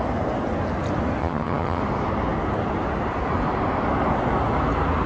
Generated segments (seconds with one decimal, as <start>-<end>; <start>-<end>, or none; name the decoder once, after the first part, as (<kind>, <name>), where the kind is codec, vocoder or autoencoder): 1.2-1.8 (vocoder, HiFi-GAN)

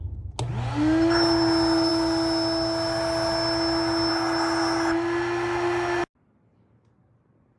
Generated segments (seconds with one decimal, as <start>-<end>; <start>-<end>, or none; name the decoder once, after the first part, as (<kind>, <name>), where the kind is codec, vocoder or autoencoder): none

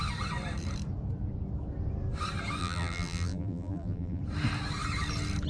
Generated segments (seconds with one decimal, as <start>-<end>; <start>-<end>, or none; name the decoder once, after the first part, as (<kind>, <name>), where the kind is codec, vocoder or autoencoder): 2.6-4.2 (vocoder, BigVGAN v2)